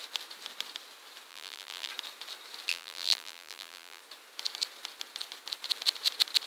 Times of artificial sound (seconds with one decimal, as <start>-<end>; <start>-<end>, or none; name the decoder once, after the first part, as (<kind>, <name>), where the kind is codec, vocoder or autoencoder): 1.3-1.9 (vocoder, BigVGAN v2); 2.7-4.0